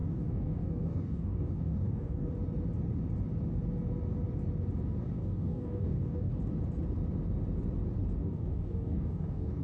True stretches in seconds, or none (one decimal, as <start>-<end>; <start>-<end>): 2.3-5.0; 6.3-8.2